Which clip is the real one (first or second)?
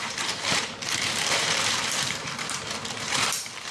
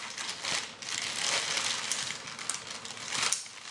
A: second